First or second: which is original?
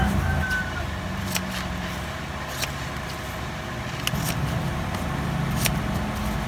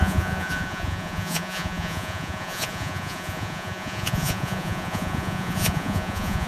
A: first